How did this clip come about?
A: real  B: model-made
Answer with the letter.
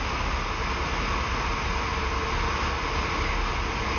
A